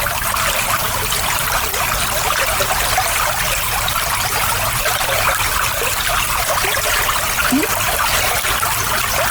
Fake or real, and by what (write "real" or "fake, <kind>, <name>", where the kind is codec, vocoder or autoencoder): real